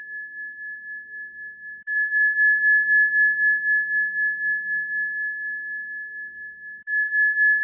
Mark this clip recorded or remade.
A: remade